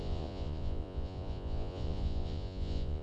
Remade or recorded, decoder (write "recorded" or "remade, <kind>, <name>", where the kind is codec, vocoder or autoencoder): remade, vocoder, Vocos